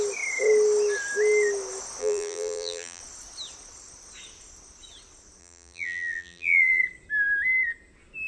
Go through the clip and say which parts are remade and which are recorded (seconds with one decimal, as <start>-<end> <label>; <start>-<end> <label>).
0.0-2.0 recorded; 2.0-3.0 remade; 3.0-5.4 recorded; 5.4-6.8 remade; 6.8-8.3 recorded